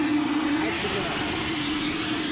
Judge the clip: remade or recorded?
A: recorded